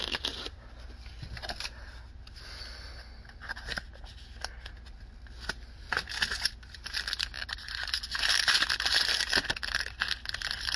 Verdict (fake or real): real